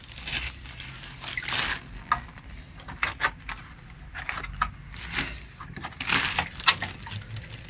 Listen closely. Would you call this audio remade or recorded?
recorded